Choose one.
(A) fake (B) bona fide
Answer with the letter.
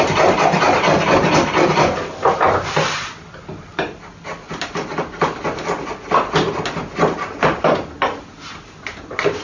B